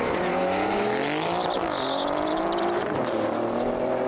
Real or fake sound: real